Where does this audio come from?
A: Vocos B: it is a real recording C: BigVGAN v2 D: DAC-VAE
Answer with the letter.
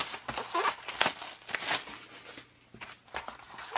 B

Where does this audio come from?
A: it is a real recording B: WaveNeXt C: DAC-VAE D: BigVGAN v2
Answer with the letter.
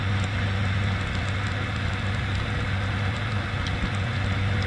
A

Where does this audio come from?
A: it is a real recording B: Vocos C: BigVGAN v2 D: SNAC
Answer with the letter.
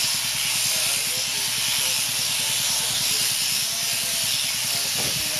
A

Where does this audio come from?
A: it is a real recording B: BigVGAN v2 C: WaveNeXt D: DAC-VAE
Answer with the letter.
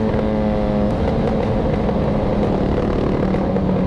A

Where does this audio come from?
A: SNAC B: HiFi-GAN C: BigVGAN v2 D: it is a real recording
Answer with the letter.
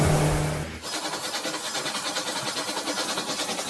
D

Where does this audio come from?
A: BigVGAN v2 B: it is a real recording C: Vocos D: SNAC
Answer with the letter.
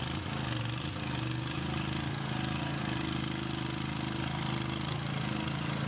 B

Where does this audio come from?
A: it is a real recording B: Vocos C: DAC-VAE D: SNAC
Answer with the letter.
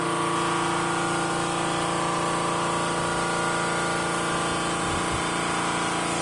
A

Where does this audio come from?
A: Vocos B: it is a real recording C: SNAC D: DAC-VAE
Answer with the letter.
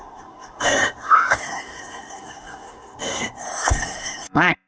C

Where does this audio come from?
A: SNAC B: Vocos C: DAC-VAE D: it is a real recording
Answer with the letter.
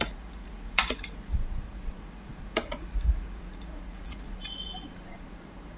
B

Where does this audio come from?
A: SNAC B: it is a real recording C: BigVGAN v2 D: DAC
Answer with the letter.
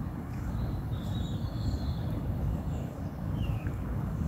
D